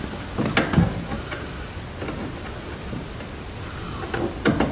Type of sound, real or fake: real